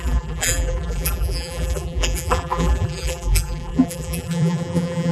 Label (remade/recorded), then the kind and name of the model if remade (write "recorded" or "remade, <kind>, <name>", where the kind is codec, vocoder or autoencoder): remade, vocoder, BigVGAN v2